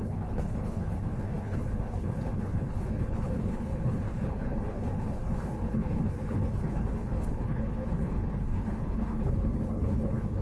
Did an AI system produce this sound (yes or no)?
yes